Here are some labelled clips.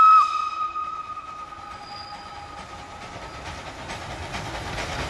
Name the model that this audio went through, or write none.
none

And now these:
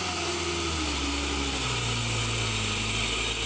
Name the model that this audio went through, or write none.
none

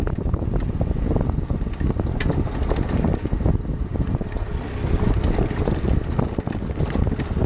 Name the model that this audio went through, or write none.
none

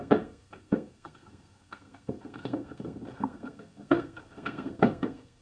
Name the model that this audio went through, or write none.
codec, SNAC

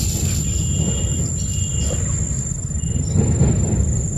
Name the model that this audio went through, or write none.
none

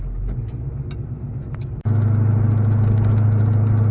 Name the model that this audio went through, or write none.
none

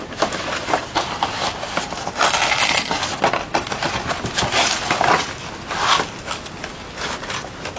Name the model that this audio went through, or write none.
none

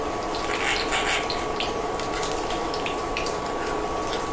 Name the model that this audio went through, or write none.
none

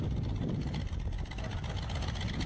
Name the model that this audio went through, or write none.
none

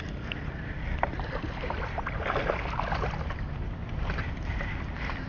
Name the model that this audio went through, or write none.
none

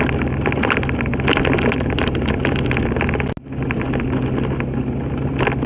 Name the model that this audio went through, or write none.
none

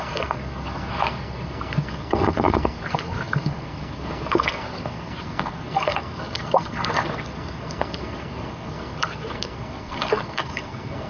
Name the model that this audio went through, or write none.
codec, SNAC